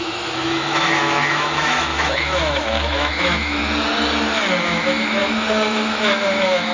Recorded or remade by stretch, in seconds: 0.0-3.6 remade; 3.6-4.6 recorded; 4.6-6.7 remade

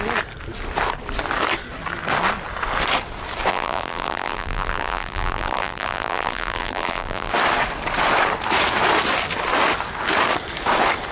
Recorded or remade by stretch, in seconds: 0.0-3.5 recorded; 3.5-7.3 remade; 7.3-11.1 recorded

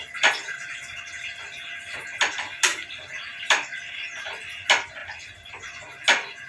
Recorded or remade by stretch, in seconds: 0.0-2.7 recorded; 2.7-3.9 remade; 3.9-5.0 recorded; 5.0-5.5 remade; 5.5-6.5 recorded

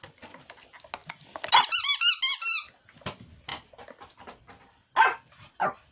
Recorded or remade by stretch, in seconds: 0.0-5.9 recorded